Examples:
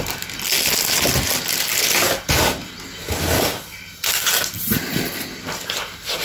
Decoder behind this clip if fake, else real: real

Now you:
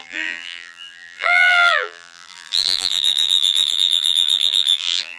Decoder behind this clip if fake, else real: fake, vocoder, BigVGAN v2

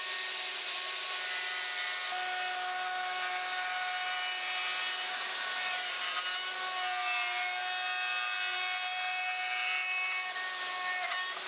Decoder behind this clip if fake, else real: real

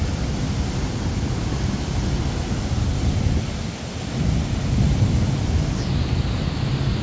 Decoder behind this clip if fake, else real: real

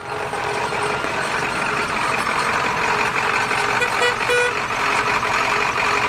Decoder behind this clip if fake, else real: real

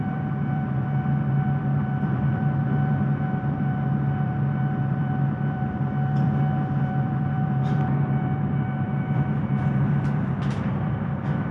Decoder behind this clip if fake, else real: fake, vocoder, BigVGAN v2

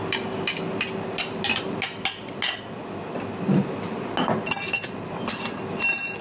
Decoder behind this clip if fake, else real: real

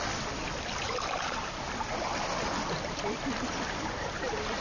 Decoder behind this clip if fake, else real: fake, vocoder, BigVGAN v2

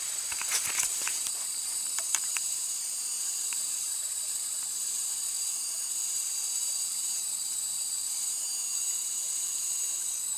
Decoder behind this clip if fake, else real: fake, vocoder, BigVGAN v2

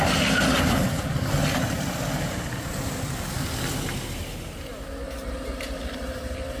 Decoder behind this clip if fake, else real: real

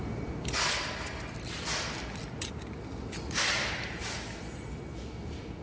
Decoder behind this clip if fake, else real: fake, vocoder, BigVGAN v2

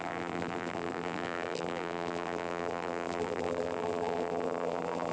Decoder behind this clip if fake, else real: fake, vocoder, BigVGAN v2